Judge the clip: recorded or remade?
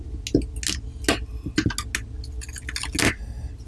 recorded